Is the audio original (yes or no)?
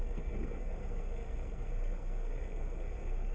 no